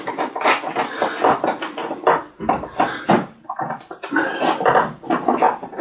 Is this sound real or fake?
real